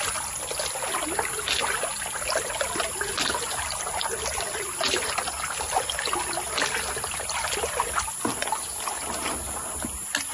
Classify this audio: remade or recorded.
recorded